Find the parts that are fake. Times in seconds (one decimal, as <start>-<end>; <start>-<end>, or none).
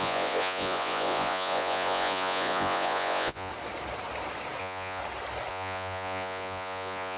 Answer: 0.0-3.5; 4.6-5.0; 5.5-7.2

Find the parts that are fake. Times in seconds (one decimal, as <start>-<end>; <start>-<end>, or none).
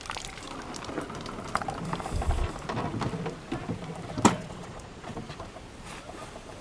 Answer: 4.4-5.2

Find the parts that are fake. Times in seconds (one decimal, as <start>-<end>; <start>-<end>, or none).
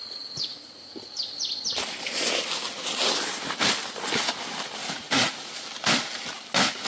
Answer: 0.0-0.9; 4.8-5.5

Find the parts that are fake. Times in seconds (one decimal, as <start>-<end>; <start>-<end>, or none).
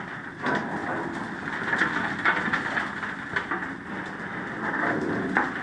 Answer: none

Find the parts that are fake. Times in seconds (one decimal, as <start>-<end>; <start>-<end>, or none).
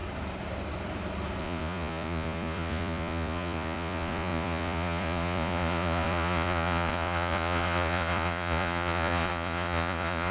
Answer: 1.4-10.3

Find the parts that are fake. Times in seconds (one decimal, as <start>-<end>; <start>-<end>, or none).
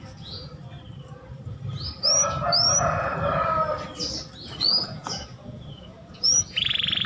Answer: 0.0-0.5; 4.8-7.1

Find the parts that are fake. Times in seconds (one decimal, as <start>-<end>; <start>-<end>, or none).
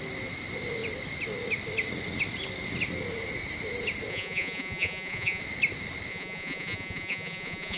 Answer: 4.1-5.4; 6.1-7.8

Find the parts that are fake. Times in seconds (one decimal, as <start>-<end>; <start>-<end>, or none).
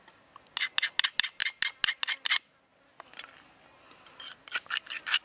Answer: none